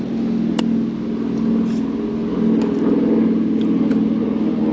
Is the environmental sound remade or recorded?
recorded